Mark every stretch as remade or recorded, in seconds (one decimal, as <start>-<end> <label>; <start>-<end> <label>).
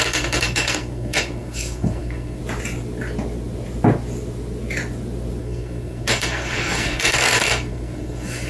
0.0-2.4 remade; 2.4-5.4 recorded; 5.4-8.5 remade